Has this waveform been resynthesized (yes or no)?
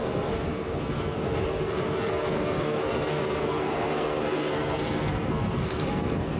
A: yes